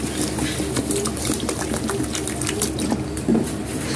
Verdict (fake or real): real